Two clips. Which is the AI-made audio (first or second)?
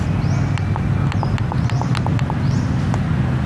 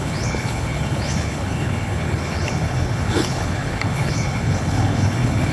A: second